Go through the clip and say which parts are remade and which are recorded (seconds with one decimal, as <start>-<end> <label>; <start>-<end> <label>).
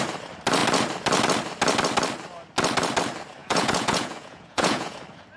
0.0-3.4 recorded; 3.4-5.0 remade; 5.0-5.4 recorded